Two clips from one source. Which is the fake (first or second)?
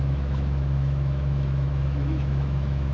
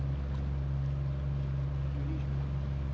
first